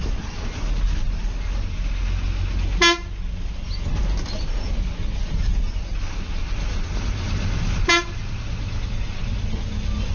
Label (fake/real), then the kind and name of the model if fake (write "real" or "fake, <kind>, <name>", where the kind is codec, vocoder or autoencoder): real